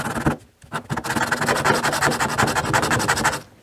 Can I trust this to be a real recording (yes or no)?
yes